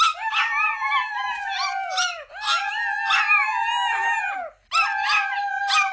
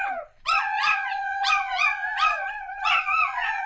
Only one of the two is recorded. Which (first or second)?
first